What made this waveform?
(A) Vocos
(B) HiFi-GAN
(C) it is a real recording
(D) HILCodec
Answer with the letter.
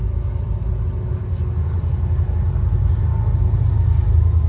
C